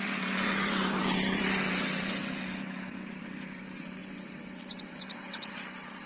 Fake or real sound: fake